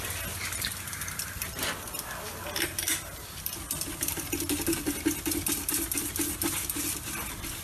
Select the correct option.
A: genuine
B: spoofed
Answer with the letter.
A